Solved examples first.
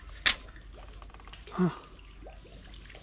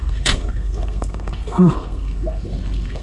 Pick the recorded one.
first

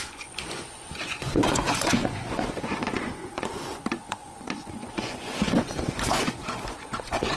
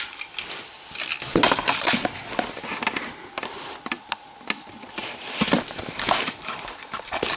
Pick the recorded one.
second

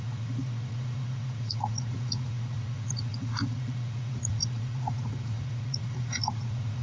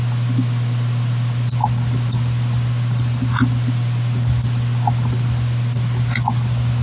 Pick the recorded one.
second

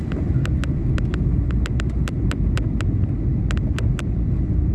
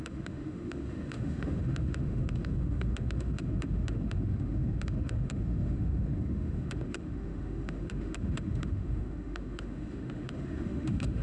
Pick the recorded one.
first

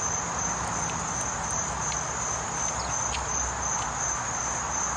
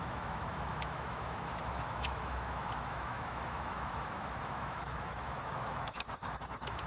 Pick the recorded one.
first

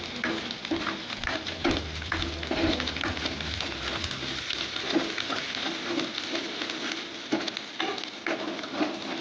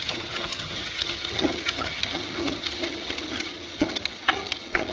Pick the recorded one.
first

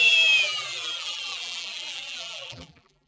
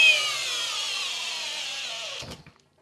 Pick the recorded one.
second